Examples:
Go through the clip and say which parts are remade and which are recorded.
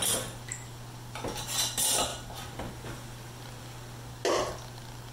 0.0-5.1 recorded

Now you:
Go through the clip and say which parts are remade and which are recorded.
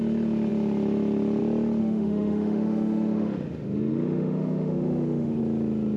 0.0-1.8 recorded; 1.8-5.4 remade; 5.4-6.0 recorded